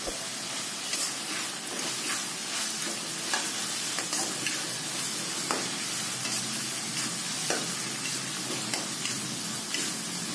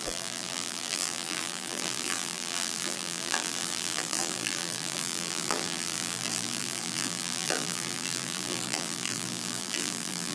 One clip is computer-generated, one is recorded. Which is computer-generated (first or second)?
second